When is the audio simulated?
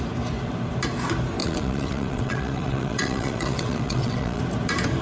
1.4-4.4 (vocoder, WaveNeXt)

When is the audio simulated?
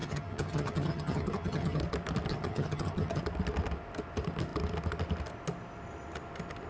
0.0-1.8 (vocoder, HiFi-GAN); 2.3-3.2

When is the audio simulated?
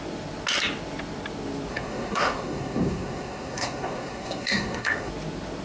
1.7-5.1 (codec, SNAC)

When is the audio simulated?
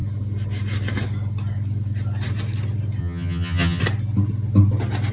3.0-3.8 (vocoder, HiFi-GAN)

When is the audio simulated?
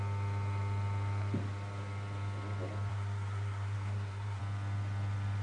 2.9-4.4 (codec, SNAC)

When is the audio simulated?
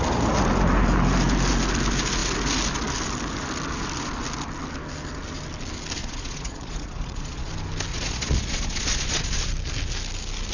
6.0-7.5 (vocoder, Vocos); 7.9-9.5